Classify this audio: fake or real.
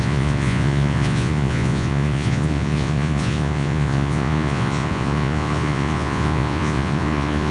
fake